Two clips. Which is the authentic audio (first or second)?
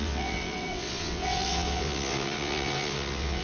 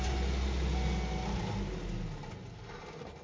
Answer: second